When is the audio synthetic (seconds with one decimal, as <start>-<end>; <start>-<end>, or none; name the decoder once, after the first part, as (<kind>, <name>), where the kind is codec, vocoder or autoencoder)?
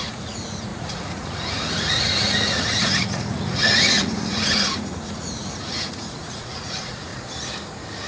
0.0-7.1 (vocoder, Vocos)